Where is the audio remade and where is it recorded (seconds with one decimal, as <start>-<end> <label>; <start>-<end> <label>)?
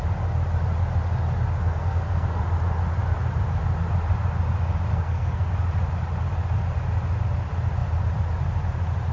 0.0-1.8 recorded; 1.8-2.4 remade; 2.4-4.9 recorded; 4.9-5.5 remade; 5.5-9.1 recorded